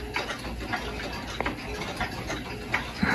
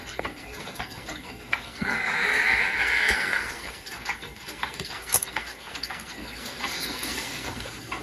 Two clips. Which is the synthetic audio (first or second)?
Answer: second